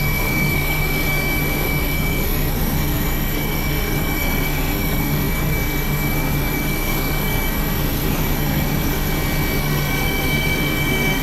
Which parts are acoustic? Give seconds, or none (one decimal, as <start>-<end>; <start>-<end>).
9.1-9.6